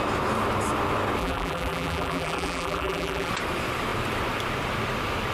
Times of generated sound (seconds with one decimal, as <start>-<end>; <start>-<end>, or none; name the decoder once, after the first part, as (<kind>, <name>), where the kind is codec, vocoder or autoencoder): 1.2-3.3 (vocoder, BigVGAN v2)